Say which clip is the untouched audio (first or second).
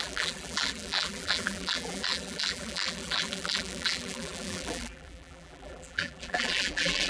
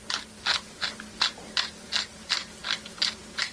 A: second